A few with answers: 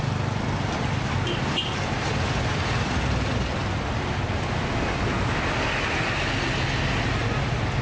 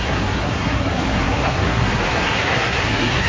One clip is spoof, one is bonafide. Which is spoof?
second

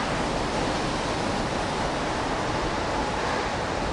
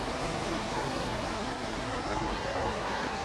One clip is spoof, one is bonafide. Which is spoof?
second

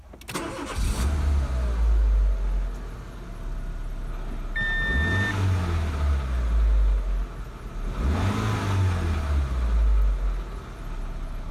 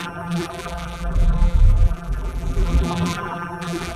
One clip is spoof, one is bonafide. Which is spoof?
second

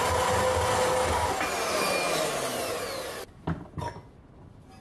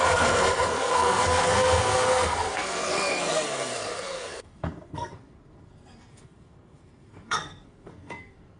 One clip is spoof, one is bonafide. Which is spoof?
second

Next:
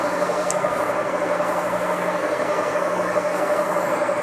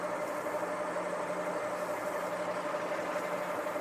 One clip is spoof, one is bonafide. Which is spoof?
first